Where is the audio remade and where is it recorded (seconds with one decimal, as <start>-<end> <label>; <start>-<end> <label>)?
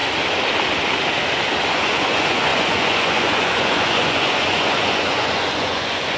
0.0-1.7 recorded; 1.7-6.2 remade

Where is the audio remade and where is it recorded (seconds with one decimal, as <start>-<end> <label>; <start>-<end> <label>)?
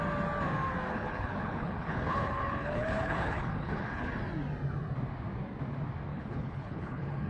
0.0-0.9 recorded; 0.9-4.1 remade; 4.1-6.1 recorded; 6.1-7.3 remade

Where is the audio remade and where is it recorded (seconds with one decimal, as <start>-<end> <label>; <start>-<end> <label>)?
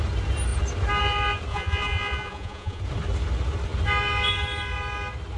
0.0-1.5 recorded; 1.5-2.8 remade; 2.8-5.4 recorded